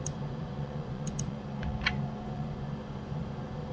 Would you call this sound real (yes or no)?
no